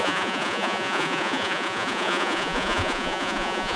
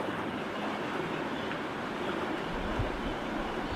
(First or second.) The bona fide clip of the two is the second